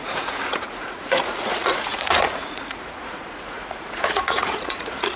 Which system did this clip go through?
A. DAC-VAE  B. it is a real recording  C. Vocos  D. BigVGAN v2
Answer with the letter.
C